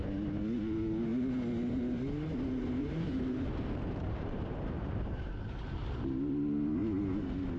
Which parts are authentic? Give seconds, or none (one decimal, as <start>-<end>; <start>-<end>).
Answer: 0.0-2.8; 6.3-7.6